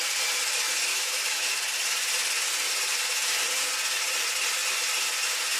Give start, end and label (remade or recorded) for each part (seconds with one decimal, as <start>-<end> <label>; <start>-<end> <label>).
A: 0.0-0.9 recorded; 0.9-1.5 remade; 1.5-5.6 recorded